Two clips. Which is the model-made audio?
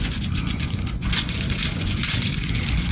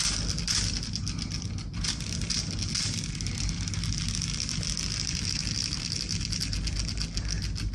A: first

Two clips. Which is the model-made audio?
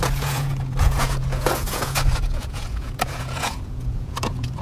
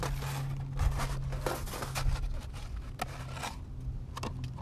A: first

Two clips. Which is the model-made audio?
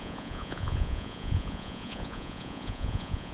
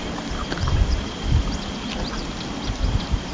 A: first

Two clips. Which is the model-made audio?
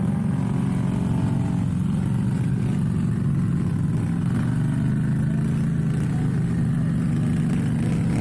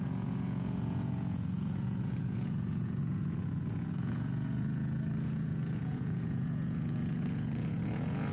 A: second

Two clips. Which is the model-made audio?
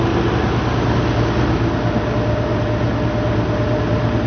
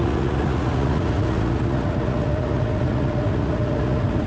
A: second